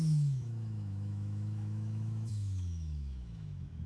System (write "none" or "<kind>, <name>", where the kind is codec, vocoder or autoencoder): autoencoder, DAC-VAE